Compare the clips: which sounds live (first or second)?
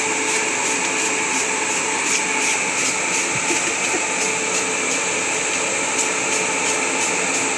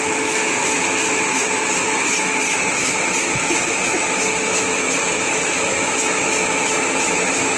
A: first